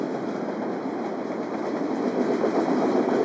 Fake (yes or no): no